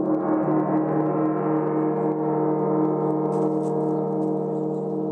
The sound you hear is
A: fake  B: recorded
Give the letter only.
B